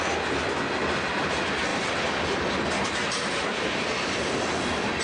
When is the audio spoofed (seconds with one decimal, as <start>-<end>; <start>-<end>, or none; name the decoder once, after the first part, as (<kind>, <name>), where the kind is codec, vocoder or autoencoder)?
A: none